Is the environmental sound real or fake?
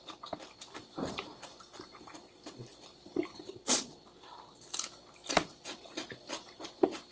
real